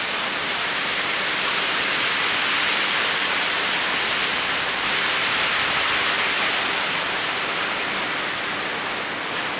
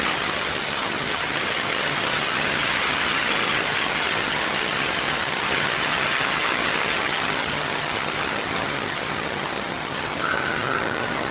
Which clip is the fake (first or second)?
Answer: second